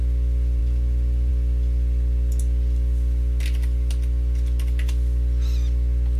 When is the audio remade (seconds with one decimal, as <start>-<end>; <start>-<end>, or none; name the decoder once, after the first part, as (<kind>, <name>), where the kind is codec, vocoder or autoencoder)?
none